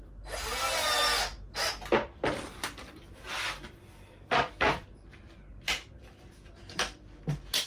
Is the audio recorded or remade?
recorded